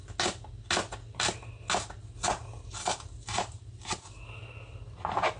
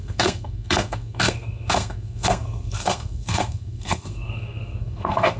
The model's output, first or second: second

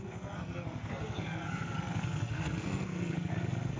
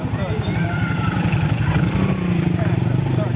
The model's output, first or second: first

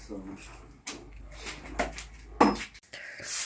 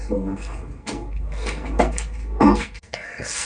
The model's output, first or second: second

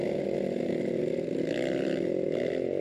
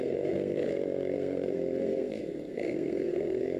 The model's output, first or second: second